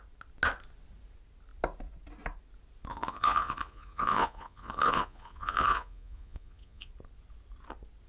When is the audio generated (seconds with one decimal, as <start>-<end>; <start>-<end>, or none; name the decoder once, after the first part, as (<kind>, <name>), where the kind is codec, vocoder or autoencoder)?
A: 2.9-6.9 (vocoder, Vocos)